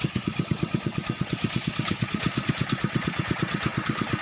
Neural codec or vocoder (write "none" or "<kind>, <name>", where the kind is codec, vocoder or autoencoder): vocoder, WaveNeXt